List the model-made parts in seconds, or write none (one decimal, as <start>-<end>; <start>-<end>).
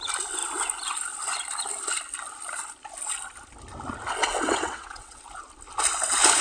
4.2-5.2